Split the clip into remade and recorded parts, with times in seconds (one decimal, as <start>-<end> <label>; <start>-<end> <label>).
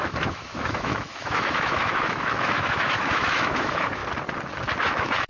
0.0-4.0 remade; 4.0-4.8 recorded; 4.8-5.3 remade